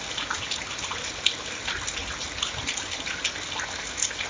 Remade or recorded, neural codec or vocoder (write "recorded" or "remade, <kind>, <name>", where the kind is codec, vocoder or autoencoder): recorded